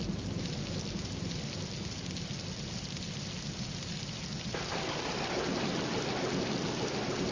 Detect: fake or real real